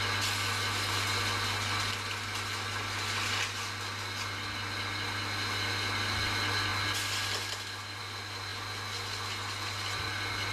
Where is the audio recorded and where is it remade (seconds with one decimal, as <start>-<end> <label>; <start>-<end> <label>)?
0.0-10.5 recorded